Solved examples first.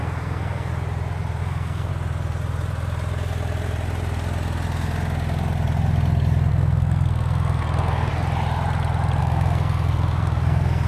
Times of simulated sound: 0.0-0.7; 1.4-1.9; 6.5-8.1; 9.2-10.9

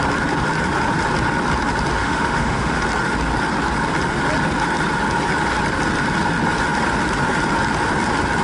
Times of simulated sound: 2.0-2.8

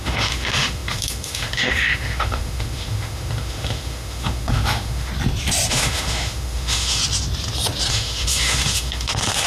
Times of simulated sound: 0.0-5.1; 5.7-7.0; 7.9-9.5

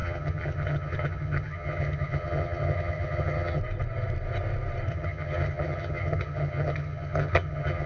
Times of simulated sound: 0.0-3.6; 4.9-7.9

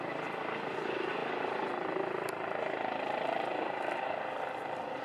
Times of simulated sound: none

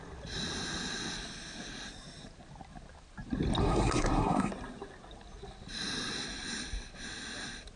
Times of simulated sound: 3.6-4.5

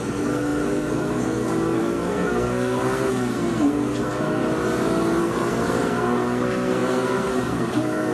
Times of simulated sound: 0.0-4.4; 5.2-8.1